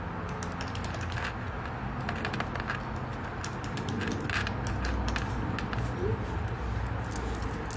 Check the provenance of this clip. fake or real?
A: real